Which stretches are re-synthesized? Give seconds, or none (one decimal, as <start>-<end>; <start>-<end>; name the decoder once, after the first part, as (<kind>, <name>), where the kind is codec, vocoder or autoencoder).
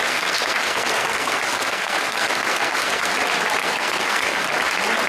0.0-3.1 (codec, SNAC); 3.6-4.5